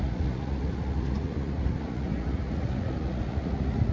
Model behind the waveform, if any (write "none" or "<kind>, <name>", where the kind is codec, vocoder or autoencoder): vocoder, Vocos